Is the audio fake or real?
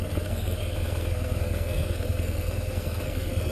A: fake